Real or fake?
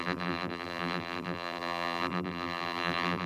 fake